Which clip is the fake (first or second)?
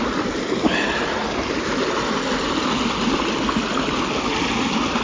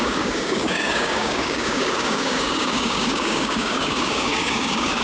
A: second